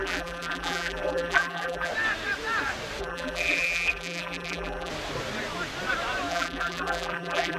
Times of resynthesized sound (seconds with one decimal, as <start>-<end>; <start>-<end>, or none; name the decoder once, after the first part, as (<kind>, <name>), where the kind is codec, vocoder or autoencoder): 0.0-1.9 (vocoder, BigVGAN v2); 3.0-4.9; 6.3-7.6